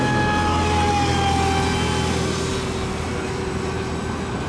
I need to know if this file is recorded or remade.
recorded